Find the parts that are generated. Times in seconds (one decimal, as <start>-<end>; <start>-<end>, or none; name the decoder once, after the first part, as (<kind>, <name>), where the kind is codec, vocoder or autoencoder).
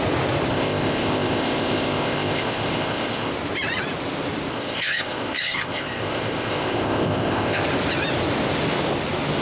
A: 0.5-3.3 (codec, ZipCodec); 4.5-7.6